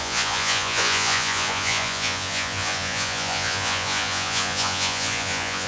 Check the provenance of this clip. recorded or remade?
remade